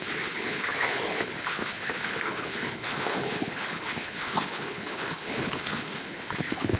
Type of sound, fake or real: fake